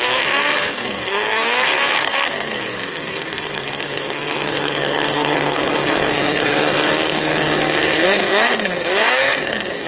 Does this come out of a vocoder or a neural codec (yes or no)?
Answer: yes